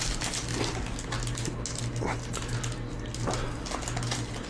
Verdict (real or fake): real